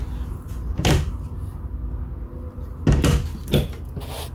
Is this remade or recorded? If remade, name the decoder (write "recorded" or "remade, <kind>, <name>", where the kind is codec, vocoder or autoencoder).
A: recorded